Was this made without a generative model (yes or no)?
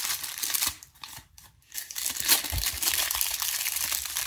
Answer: no